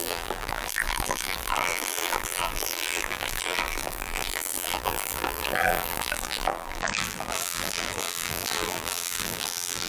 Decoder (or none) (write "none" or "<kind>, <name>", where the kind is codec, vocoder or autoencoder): vocoder, BigVGAN v2